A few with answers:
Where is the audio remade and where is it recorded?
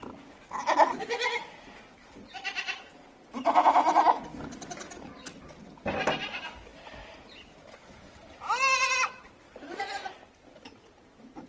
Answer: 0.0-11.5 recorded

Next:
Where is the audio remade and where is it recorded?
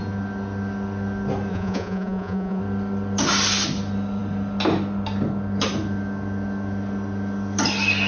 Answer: 0.0-1.5 recorded; 1.5-2.6 remade; 2.6-8.1 recorded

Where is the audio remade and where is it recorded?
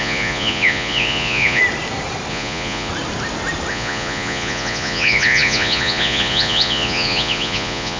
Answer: 0.0-1.6 remade; 1.6-2.3 recorded; 2.3-2.9 remade; 2.9-3.7 recorded; 3.7-8.0 remade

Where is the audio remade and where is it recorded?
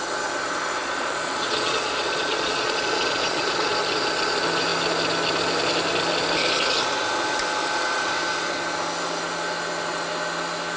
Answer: 0.0-0.8 recorded; 0.8-3.7 remade; 3.7-10.8 recorded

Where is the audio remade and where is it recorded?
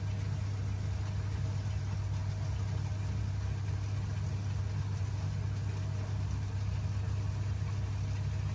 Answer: 0.0-8.5 recorded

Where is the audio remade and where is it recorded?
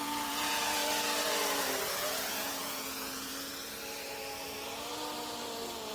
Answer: 0.0-0.8 remade; 0.8-1.9 recorded; 1.9-3.3 remade; 3.3-5.9 recorded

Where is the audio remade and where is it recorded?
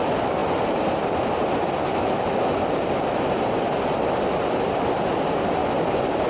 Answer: 0.0-6.3 recorded